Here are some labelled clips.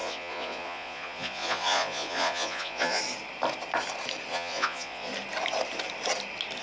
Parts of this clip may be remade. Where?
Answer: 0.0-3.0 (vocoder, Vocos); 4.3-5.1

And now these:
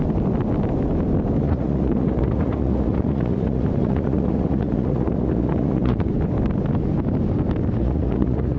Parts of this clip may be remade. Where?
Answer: 1.4-6.1 (vocoder, Vocos); 7.8-8.6

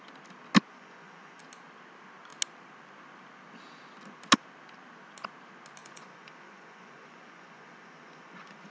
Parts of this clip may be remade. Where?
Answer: 0.7-1.4 (vocoder, Vocos); 5.8-8.7

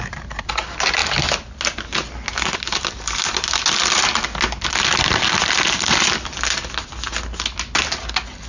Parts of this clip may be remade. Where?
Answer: none

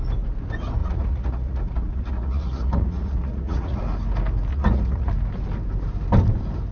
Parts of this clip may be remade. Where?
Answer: 0.8-3.8 (vocoder, Vocos); 4.5-5.1

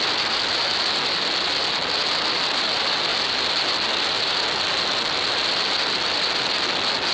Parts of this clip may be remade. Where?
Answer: none